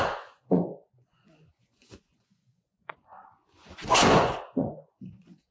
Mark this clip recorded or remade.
remade